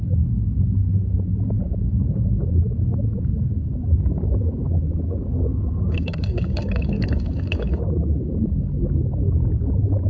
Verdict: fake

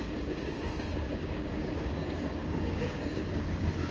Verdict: fake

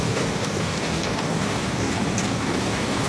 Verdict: fake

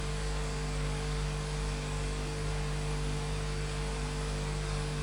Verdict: fake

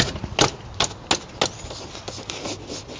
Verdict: real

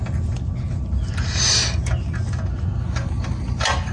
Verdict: real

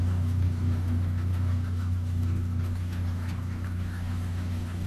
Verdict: fake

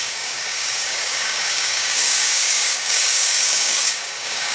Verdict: fake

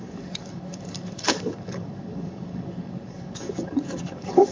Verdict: fake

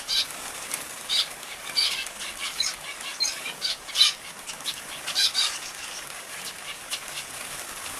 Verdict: fake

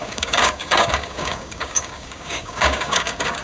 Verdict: fake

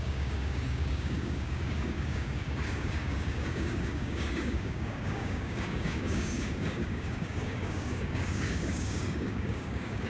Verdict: fake